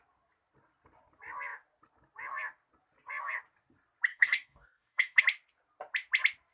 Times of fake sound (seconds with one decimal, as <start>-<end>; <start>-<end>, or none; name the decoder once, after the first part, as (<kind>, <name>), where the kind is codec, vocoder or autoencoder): 4.1-5.2 (codec, DAC)